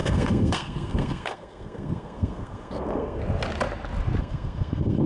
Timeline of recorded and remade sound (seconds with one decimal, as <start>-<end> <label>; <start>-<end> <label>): 0.0-3.2 remade; 3.2-4.2 recorded; 4.2-5.1 remade